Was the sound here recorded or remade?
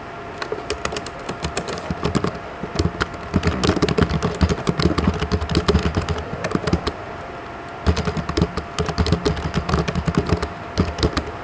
recorded